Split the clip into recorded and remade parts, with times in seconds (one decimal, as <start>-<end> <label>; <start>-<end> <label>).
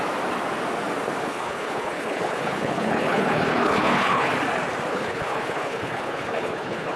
0.0-1.2 recorded; 1.2-4.3 remade; 4.3-4.9 recorded; 4.9-7.0 remade